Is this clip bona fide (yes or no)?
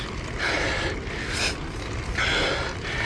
yes